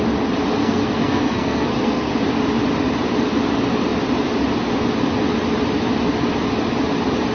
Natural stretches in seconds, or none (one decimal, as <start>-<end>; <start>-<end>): 0.0-0.6; 2.1-7.3